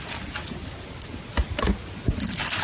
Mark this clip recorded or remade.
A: recorded